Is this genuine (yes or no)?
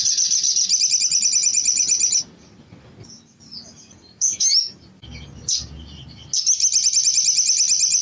yes